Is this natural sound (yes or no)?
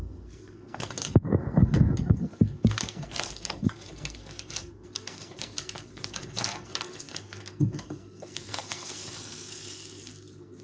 no